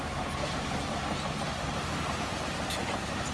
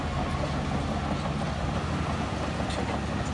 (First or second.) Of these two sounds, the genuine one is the second